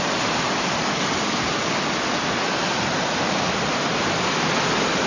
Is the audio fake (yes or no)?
no